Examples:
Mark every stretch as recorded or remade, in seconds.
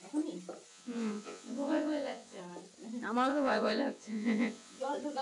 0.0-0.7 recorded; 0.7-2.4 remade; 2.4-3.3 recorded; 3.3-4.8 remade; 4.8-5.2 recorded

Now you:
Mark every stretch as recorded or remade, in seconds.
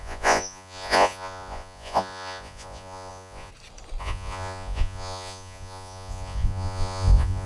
0.0-3.5 remade; 3.5-4.0 recorded; 4.0-7.5 remade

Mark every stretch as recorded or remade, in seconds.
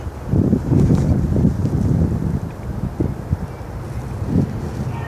0.0-0.5 recorded; 0.5-1.0 remade; 1.0-5.1 recorded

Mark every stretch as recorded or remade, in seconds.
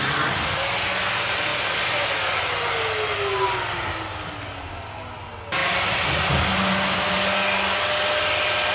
0.0-8.7 recorded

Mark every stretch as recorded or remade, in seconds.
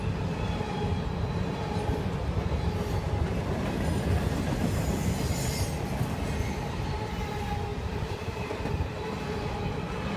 0.0-7.7 recorded; 7.7-8.5 remade; 8.5-10.2 recorded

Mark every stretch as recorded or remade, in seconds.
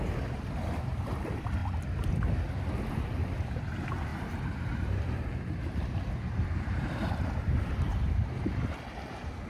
0.0-1.6 remade; 1.6-2.9 recorded; 2.9-9.5 remade